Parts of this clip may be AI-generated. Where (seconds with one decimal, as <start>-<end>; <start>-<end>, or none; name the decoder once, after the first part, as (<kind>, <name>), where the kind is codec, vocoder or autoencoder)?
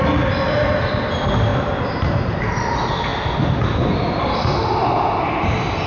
1.5-2.4 (vocoder, BigVGAN v2)